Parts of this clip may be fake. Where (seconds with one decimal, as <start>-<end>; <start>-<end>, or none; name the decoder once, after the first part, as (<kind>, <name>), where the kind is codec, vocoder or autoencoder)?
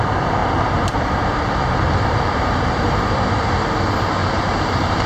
0.4-3.5 (vocoder, BigVGAN v2); 4.2-5.1